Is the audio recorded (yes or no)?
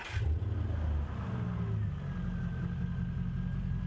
yes